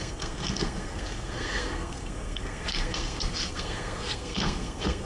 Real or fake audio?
fake